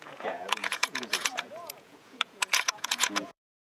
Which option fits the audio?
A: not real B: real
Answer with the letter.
A